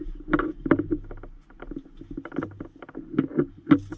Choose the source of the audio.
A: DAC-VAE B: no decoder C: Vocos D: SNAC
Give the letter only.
B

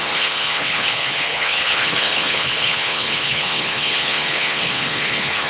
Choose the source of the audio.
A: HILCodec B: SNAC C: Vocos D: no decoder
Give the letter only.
A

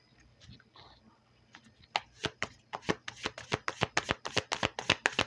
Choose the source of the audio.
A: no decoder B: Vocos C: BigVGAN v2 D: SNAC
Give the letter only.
A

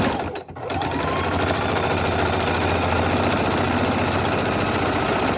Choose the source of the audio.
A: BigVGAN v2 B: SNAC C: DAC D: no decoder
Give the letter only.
D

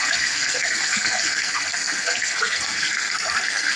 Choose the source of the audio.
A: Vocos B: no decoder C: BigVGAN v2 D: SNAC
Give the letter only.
D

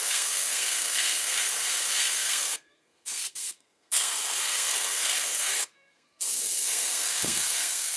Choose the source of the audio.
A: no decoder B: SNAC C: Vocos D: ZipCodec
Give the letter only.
B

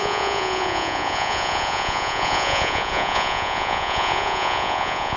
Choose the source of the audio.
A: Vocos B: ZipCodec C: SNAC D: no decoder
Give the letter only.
A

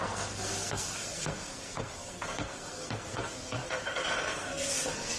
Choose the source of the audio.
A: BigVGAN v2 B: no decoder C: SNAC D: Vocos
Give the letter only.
C